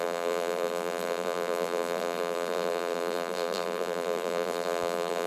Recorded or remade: remade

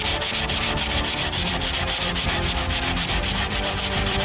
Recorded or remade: remade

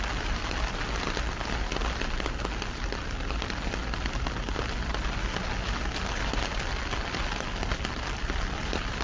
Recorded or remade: recorded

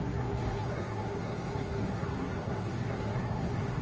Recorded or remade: remade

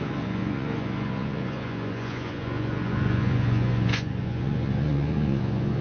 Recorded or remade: remade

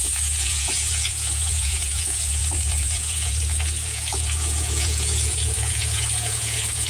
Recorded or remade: remade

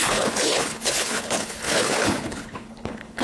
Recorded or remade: remade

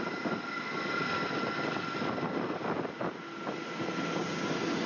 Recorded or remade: recorded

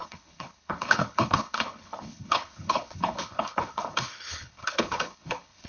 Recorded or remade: remade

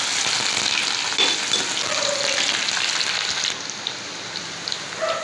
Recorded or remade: recorded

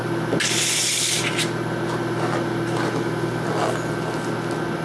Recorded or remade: recorded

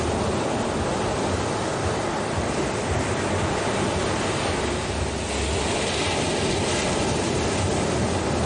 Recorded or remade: recorded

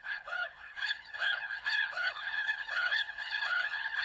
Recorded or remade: remade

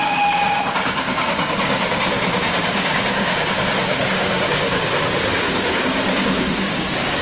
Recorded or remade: remade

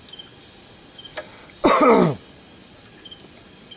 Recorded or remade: recorded